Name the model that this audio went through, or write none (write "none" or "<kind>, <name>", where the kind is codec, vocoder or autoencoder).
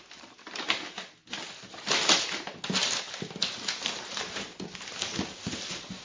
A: none